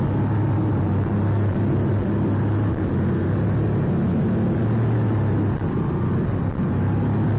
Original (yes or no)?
yes